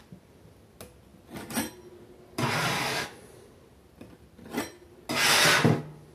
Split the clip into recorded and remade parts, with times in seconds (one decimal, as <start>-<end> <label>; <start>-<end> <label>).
0.0-6.1 recorded